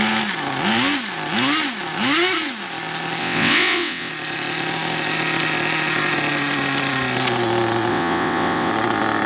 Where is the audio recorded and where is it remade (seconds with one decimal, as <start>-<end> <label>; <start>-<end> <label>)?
0.0-3.2 recorded; 3.2-4.1 remade; 4.1-7.9 recorded; 7.9-8.7 remade; 8.7-9.3 recorded